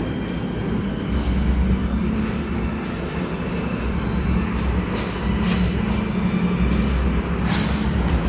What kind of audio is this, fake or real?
real